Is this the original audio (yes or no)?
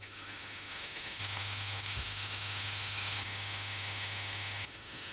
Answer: no